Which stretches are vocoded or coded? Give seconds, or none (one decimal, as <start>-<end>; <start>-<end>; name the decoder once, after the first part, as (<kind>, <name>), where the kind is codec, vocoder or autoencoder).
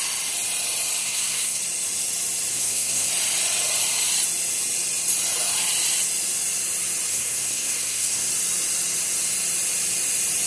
1.0-1.6 (codec, SNAC); 2.5-3.1; 7.1-8.3